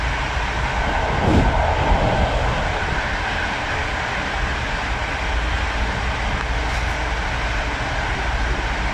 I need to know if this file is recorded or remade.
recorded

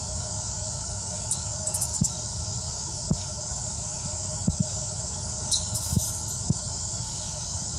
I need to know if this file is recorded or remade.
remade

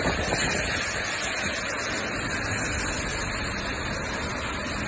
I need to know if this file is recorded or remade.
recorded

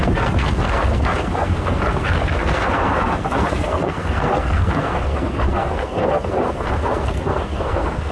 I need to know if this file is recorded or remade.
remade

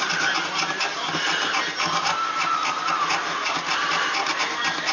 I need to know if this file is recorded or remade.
recorded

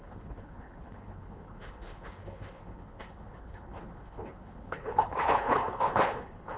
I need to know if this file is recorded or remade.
remade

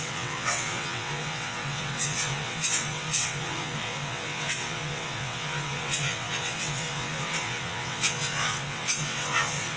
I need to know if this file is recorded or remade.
remade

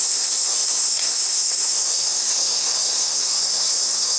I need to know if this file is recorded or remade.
remade